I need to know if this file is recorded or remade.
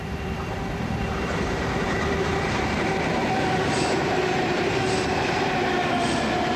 remade